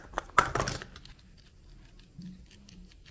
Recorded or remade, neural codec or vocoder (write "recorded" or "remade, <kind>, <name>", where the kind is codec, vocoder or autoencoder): recorded